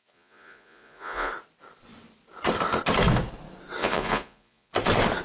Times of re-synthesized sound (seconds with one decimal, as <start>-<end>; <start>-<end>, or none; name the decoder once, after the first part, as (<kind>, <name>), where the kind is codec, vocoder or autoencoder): 0.0-1.3 (vocoder, Vocos); 3.8-4.7